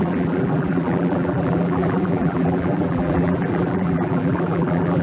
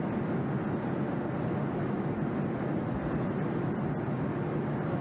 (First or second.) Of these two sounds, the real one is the second